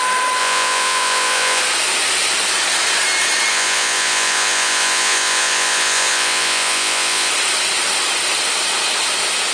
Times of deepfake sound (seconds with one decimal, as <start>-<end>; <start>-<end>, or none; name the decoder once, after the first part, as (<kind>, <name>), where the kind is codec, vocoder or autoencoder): 0.4-1.6 (vocoder, Vocos); 3.5-7.3